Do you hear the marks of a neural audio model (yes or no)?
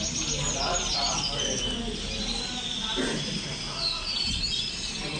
no